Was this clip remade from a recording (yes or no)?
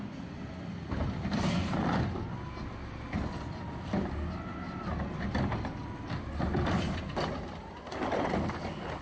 no